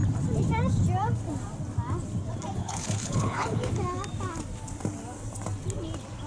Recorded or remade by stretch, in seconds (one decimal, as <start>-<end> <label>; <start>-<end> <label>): 0.0-2.6 recorded; 2.6-3.7 remade; 3.7-6.3 recorded

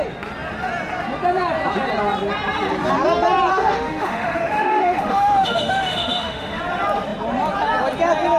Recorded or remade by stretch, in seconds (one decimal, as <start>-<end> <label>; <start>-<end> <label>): 0.0-3.5 recorded; 3.5-6.6 remade; 6.6-8.4 recorded

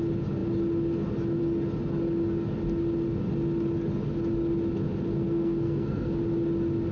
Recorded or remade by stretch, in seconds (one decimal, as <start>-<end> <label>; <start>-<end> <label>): 0.0-5.1 recorded; 5.1-6.1 remade; 6.1-6.9 recorded

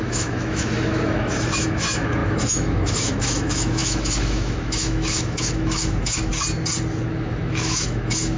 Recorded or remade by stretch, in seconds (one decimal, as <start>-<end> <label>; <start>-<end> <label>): 0.0-6.3 remade; 6.3-7.1 recorded; 7.1-8.4 remade

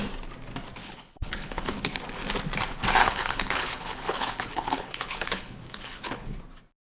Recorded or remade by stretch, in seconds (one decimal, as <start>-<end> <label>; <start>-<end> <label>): 0.0-0.8 recorded; 0.8-2.0 remade; 2.0-3.0 recorded; 3.0-6.4 remade; 6.4-7.0 recorded